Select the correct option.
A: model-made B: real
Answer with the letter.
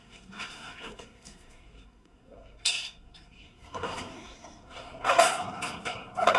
A